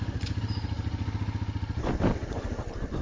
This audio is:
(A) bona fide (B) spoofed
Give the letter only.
A